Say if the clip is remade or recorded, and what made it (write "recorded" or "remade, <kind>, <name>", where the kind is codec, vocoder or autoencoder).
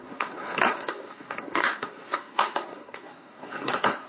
remade, codec, SNAC